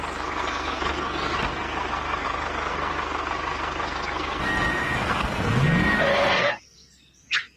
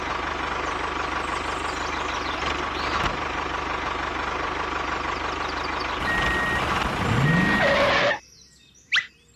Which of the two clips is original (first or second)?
second